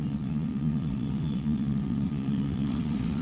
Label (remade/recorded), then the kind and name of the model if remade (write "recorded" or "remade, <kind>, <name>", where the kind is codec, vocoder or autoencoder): remade, vocoder, WaveNeXt